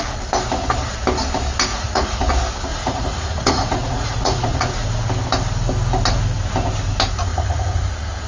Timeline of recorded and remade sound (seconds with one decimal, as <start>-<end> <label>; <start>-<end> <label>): 0.0-1.7 recorded; 1.7-2.3 remade; 2.3-2.7 recorded; 2.7-4.7 remade; 4.7-7.3 recorded; 7.3-7.8 remade; 7.8-8.3 recorded